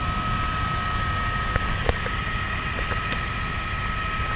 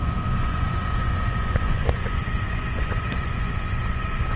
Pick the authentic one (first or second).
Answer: first